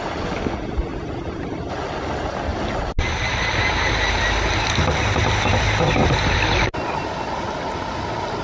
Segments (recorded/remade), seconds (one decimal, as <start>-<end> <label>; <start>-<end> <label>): 0.0-8.4 recorded